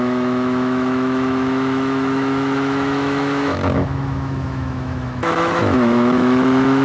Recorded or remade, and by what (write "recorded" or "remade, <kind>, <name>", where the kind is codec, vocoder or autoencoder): remade, autoencoder, DAC-VAE